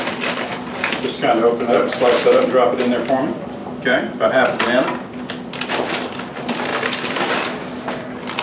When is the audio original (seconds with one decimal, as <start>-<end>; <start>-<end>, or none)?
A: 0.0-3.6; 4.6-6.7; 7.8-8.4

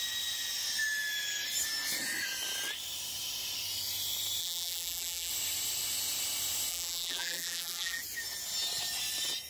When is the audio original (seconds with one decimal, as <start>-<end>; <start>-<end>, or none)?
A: 0.0-4.4; 5.3-6.7; 8.0-9.5

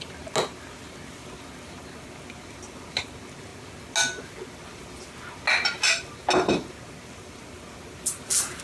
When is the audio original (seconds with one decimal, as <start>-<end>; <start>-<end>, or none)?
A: 0.0-8.6